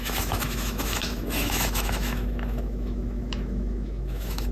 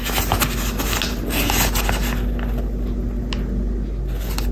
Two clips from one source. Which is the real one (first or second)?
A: second